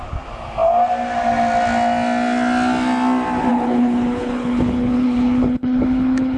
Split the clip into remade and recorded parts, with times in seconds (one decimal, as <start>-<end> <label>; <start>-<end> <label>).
0.0-3.5 recorded; 3.5-6.4 remade